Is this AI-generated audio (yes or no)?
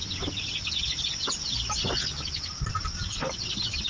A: no